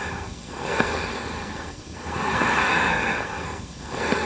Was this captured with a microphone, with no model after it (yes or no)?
no